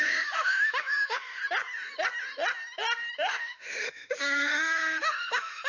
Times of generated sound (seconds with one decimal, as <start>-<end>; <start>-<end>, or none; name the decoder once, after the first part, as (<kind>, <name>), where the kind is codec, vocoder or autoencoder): 0.0-1.4 (autoencoder, DAC-VAE); 3.3-5.7